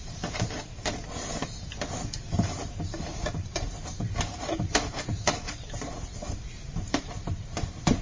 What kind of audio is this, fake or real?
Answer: fake